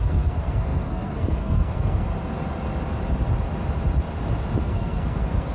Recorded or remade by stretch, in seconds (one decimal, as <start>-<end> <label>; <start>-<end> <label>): 0.0-2.1 remade; 2.1-4.6 recorded; 4.6-5.5 remade